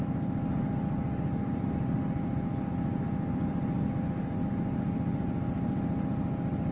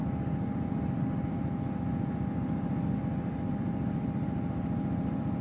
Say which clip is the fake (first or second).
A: second